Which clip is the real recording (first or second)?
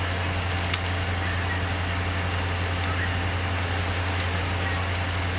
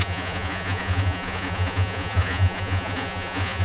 first